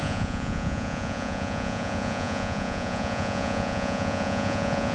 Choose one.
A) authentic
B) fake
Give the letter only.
B